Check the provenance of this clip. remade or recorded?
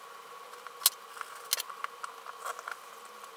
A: recorded